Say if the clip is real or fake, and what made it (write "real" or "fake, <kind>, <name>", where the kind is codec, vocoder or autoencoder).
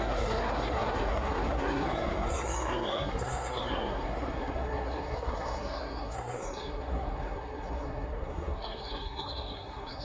fake, codec, SNAC